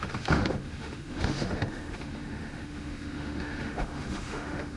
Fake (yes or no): yes